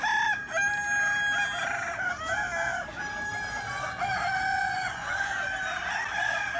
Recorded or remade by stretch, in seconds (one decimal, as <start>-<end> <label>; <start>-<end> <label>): 0.0-4.5 recorded; 4.5-5.3 remade; 5.3-6.6 recorded